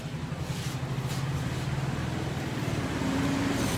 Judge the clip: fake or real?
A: real